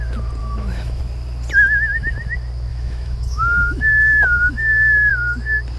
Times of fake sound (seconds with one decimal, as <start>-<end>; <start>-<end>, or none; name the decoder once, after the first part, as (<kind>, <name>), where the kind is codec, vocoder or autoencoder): 0.4-1.0 (autoencoder, DAC-VAE); 2.7-5.1

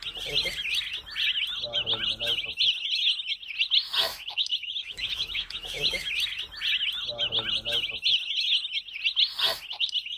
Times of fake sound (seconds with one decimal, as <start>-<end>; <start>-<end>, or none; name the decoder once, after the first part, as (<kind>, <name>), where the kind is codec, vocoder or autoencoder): 4.1-6.1 (autoencoder, DAC-VAE)

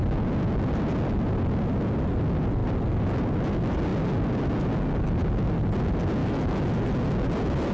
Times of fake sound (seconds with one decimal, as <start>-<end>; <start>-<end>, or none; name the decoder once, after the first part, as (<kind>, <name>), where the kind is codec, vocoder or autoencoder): 6.2-6.9 (autoencoder, DAC-VAE)